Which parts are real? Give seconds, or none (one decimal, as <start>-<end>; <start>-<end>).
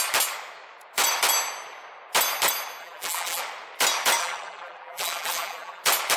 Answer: 0.0-2.8; 3.4-4.2; 5.8-6.2